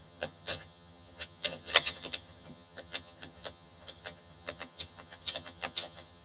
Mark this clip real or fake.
fake